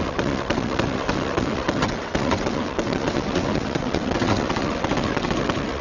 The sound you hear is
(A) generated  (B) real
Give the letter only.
A